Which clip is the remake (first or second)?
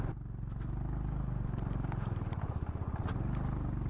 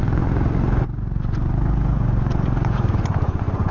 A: second